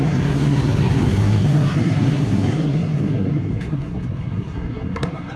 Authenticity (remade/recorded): remade